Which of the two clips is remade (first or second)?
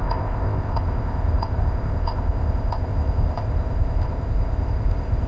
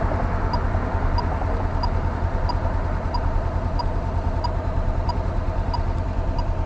first